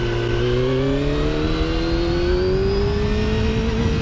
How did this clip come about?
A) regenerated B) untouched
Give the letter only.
B